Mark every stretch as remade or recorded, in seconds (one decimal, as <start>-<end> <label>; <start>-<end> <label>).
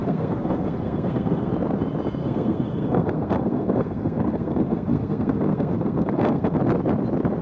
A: 0.0-1.5 remade; 1.5-2.2 recorded; 2.2-6.6 remade; 6.6-7.4 recorded